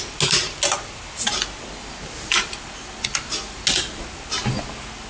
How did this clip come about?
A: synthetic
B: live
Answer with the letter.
B